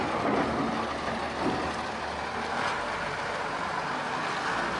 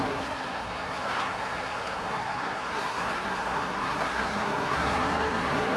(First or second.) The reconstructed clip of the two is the second